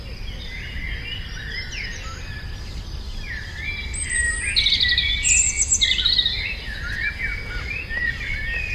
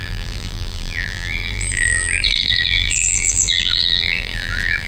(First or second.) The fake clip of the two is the second